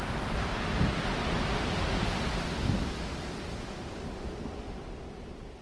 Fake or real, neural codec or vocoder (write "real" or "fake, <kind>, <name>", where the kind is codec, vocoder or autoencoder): real